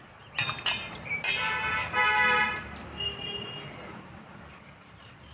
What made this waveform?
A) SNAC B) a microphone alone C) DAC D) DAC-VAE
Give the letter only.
B